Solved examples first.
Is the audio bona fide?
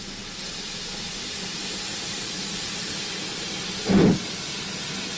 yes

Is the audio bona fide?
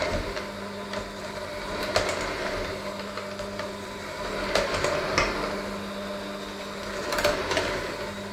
yes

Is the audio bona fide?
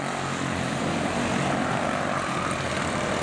yes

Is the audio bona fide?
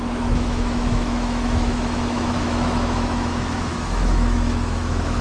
no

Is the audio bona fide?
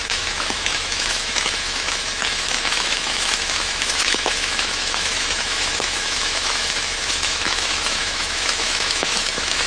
no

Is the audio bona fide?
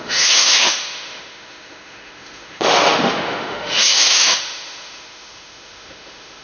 no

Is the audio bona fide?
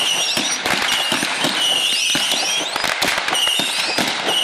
yes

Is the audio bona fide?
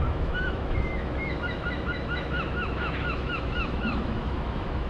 no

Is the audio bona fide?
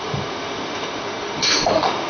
no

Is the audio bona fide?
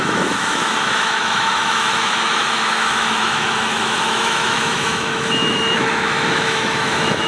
no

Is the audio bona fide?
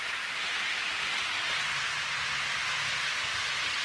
yes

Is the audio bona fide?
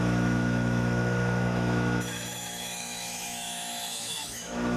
no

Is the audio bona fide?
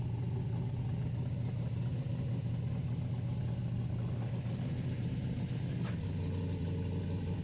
yes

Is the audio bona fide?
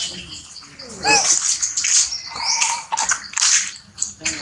yes